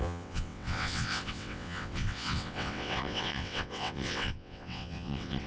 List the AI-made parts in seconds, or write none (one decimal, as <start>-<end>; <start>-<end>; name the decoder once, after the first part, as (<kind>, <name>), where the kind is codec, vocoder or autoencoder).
0.0-5.5 (vocoder, WaveNeXt)